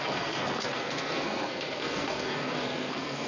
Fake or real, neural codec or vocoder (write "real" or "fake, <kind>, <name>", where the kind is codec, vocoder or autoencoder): fake, codec, SNAC